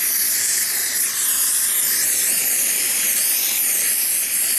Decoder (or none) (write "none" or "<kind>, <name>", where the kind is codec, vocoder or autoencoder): none